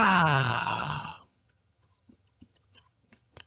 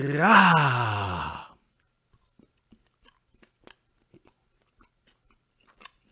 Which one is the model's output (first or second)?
first